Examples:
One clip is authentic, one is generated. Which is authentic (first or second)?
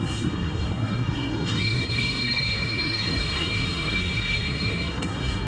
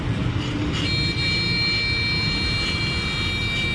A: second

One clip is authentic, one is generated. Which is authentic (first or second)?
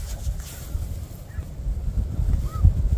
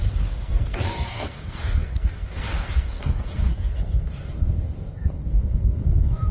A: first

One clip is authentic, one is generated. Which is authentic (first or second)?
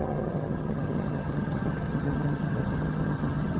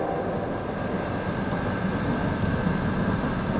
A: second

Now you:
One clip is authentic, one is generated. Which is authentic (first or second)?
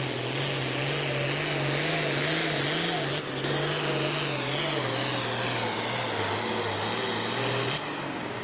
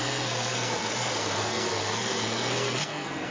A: first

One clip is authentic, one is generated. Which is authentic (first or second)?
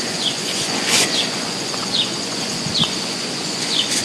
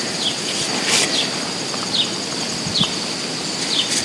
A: second